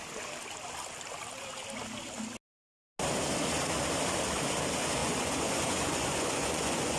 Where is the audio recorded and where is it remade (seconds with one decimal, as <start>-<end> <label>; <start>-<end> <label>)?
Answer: 0.0-5.0 recorded; 5.0-7.0 remade